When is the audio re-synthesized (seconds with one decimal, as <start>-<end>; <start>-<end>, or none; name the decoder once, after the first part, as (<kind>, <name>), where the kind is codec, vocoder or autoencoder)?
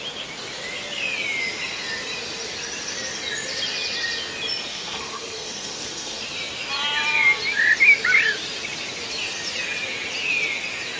4.7-6.2 (codec, SNAC)